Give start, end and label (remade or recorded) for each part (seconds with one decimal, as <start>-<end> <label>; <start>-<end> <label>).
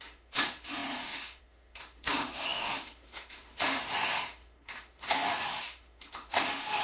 0.0-6.8 remade